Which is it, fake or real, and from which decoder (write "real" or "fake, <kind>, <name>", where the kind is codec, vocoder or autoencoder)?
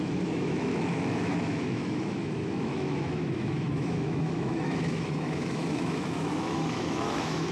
fake, autoencoder, DAC-VAE